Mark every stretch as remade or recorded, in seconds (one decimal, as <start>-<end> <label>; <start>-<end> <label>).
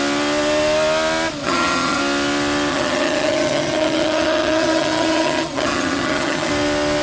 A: 0.0-1.4 recorded; 1.4-2.0 remade; 2.0-2.7 recorded; 2.7-6.5 remade; 6.5-7.0 recorded